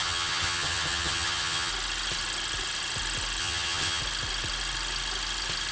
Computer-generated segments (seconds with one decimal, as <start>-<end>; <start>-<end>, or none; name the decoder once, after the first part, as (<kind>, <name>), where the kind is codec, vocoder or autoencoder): 0.0-1.7 (vocoder, HiFi-GAN); 3.4-4.0